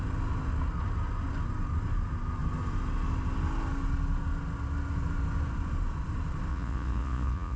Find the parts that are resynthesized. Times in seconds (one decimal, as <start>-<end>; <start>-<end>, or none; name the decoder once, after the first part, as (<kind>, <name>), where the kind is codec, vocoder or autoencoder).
6.5-7.6 (vocoder, Vocos)